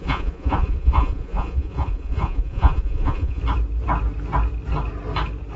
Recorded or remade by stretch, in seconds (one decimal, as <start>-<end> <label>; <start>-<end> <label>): 0.0-3.4 remade; 3.4-5.6 recorded